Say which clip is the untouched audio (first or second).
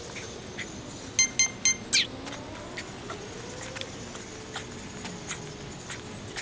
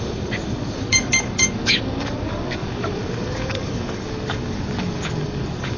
first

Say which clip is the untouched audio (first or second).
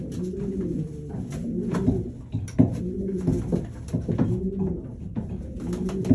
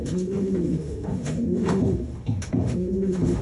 first